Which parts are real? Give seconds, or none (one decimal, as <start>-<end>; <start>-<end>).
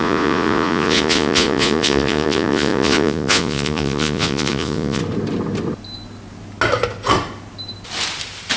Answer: 5.0-8.6